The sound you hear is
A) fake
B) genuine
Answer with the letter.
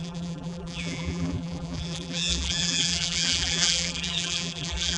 A